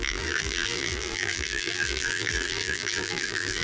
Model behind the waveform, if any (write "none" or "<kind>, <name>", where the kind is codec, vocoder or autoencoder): vocoder, BigVGAN v2